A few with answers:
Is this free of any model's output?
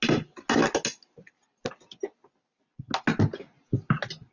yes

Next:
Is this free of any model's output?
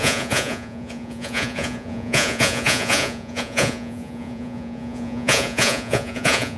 no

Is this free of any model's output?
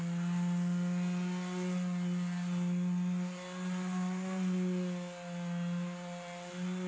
yes